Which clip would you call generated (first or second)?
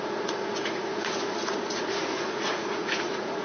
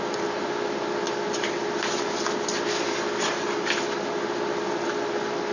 first